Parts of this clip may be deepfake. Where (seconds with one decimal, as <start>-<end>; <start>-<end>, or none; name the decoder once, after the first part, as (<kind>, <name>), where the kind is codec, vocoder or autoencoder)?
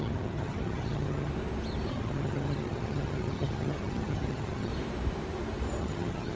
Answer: 0.0-1.3 (vocoder, HiFi-GAN); 1.9-4.7; 5.8-6.4